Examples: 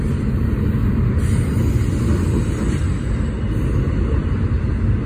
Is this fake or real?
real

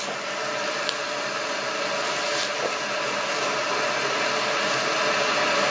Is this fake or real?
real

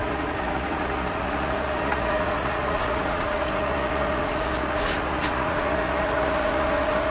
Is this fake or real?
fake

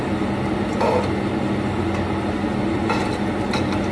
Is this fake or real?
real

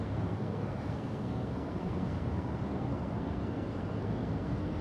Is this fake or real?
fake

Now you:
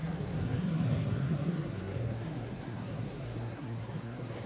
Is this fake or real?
fake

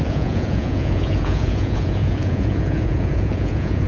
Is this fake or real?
fake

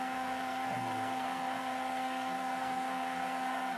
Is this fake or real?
fake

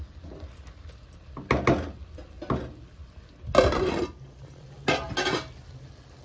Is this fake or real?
real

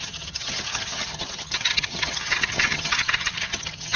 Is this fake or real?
fake